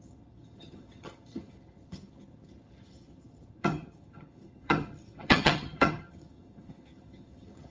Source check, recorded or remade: remade